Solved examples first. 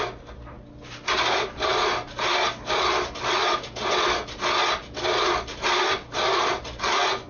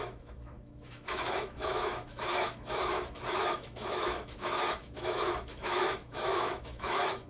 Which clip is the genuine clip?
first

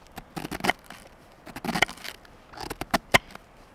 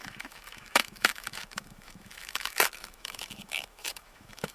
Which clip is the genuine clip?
first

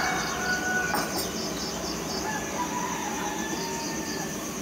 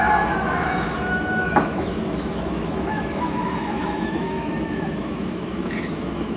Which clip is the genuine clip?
first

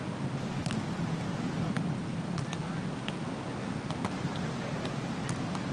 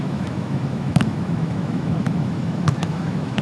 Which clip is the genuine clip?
first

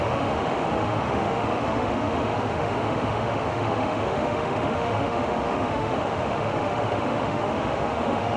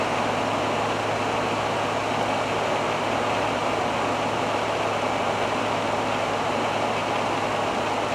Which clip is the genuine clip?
second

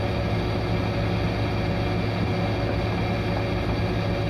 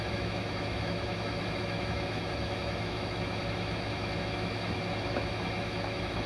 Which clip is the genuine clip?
first